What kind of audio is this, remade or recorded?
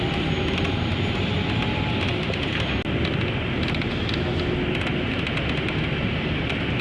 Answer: recorded